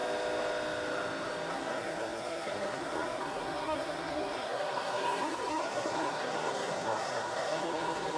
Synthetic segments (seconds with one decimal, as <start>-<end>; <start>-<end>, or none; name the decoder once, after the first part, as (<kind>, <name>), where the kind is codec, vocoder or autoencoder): 1.5-8.2 (codec, SNAC)